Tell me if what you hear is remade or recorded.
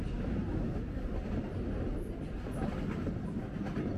recorded